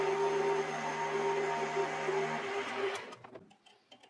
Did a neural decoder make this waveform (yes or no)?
no